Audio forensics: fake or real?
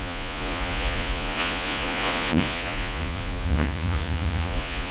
fake